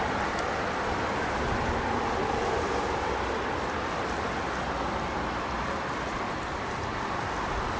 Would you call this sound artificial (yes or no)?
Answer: no